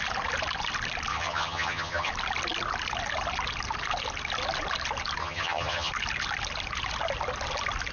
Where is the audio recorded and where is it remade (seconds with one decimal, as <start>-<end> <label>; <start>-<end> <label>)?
0.0-1.1 recorded; 1.1-2.1 remade; 2.1-5.2 recorded; 5.2-5.9 remade; 5.9-7.9 recorded